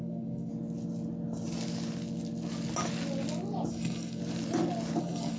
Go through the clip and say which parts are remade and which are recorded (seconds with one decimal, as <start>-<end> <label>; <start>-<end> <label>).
0.0-0.5 remade; 0.5-3.7 recorded; 3.7-4.2 remade; 4.2-5.0 recorded; 5.0-5.4 remade